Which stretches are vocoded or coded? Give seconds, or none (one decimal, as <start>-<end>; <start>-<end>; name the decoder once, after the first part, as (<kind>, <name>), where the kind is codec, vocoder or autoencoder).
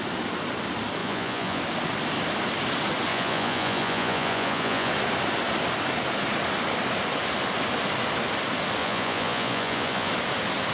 1.0-1.6 (vocoder, Vocos); 3.1-4.9; 8.8-10.1